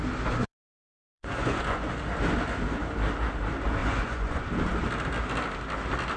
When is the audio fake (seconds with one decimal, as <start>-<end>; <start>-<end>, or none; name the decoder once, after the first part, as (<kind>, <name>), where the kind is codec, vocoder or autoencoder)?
0.4-1.9 (vocoder, Vocos); 3.8-4.4